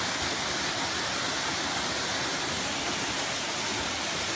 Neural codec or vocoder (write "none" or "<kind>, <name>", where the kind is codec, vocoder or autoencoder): none